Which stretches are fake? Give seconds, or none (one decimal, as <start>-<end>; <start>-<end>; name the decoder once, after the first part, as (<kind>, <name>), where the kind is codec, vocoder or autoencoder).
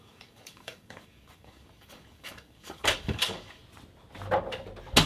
0.0-3.6 (codec, DAC)